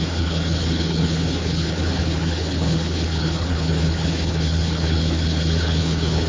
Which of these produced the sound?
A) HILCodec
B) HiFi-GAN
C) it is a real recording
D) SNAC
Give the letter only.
A